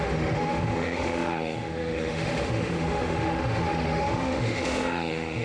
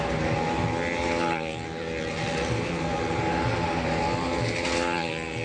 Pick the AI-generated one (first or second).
first